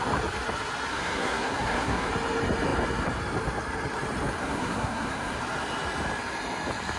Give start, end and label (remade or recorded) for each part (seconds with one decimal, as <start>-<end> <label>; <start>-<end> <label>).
0.0-0.9 recorded; 0.9-2.1 remade; 2.1-4.4 recorded; 4.4-5.4 remade; 5.4-7.0 recorded